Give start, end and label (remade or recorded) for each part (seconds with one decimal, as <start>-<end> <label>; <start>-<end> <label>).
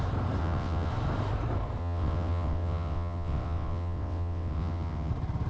0.0-0.4 recorded; 0.4-0.9 remade; 0.9-1.8 recorded; 1.8-5.1 remade; 5.1-5.5 recorded